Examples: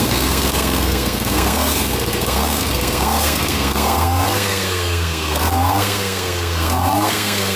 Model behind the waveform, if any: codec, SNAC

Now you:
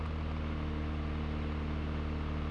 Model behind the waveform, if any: none